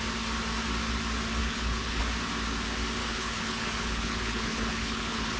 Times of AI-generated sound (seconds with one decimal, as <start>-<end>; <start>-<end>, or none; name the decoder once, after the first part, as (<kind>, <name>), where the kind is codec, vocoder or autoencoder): 1.4-2.0 (codec, HILCodec); 3.0-5.4